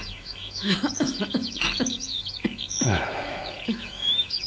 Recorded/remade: remade